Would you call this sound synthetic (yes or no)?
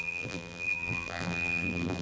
yes